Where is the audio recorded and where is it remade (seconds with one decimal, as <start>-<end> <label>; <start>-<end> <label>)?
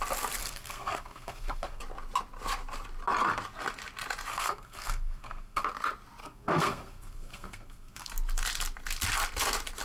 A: 0.0-0.4 recorded; 0.4-1.8 remade; 1.8-4.3 recorded; 4.3-5.6 remade; 5.6-6.2 recorded; 6.2-8.1 remade; 8.1-9.8 recorded